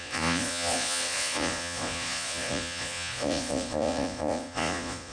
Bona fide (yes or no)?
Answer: no